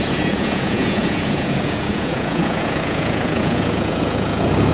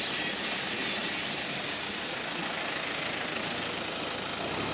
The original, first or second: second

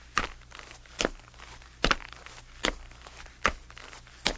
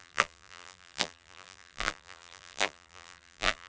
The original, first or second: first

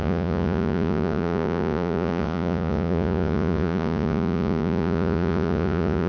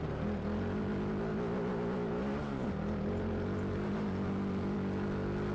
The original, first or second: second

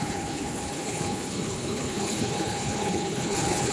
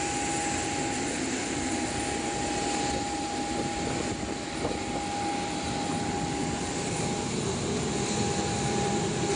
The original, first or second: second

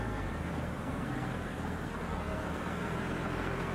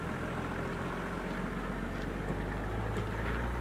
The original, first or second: second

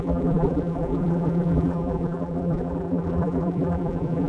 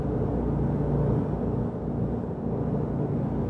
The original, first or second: second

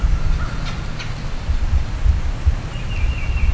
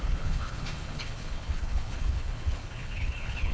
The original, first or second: first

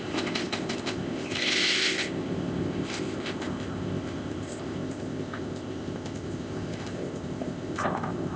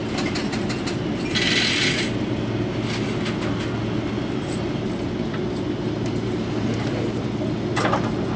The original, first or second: second